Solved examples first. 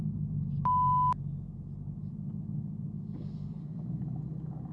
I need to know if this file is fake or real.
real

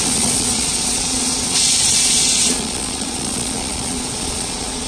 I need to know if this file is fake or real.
fake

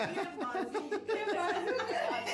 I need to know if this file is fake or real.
real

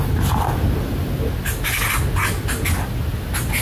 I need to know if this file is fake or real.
real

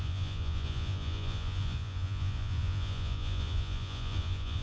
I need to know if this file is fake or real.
fake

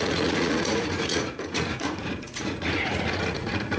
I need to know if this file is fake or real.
fake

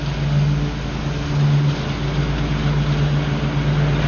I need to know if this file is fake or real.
real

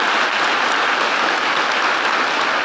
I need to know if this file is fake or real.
real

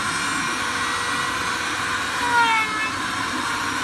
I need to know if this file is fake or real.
real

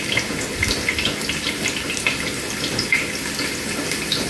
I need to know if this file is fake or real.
real